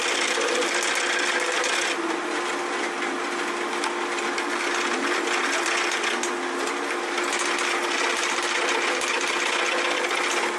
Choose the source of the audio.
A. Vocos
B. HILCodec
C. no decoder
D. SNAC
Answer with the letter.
C